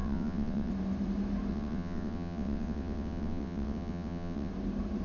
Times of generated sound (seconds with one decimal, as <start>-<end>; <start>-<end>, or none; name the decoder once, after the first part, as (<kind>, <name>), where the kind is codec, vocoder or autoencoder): 0.0-0.7 (vocoder, WaveNeXt); 1.5-4.5